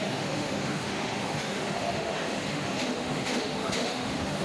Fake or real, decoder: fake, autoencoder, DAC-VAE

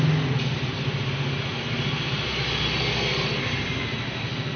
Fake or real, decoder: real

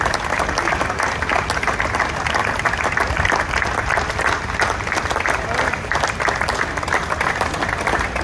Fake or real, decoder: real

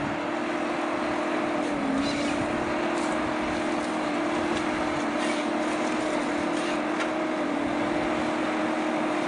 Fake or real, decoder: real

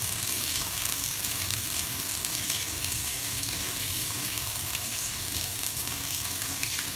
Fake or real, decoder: fake, codec, DAC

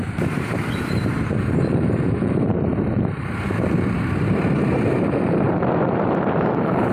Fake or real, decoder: fake, vocoder, BigVGAN v2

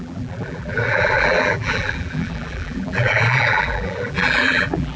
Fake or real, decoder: fake, vocoder, BigVGAN v2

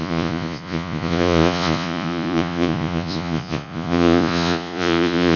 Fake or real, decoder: fake, vocoder, Vocos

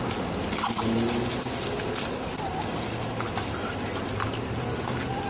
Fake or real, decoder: real